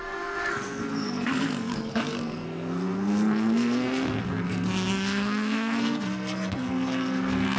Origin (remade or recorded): remade